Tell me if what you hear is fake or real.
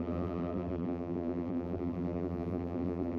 fake